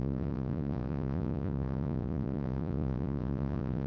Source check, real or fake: fake